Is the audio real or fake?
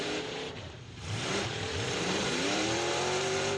fake